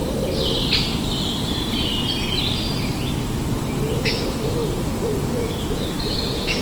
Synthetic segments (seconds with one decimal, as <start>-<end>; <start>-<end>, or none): 4.0-4.6; 5.3-6.6